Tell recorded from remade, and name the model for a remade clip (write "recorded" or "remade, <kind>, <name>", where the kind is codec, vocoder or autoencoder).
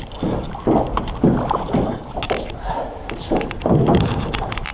recorded